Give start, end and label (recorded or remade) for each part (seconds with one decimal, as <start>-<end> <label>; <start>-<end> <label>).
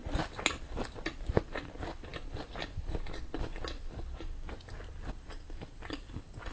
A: 0.0-6.5 recorded